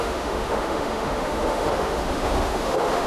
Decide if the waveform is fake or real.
fake